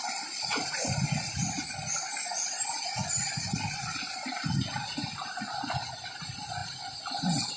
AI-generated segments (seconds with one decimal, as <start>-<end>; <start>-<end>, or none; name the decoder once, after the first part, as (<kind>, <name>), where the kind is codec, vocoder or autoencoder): none